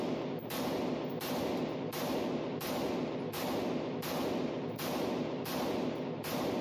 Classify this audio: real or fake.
real